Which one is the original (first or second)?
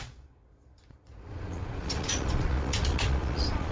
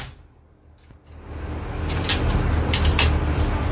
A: second